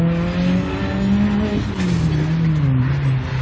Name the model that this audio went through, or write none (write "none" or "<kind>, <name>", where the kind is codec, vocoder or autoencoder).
none